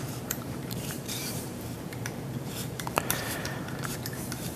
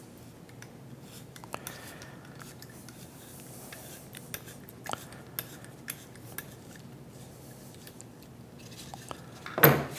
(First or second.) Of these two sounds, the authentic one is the second